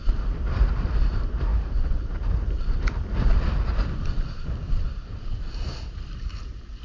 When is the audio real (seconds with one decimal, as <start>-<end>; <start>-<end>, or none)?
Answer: 0.0-6.8